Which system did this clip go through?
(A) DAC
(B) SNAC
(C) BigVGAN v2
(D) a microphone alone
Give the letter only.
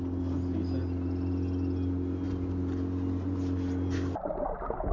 D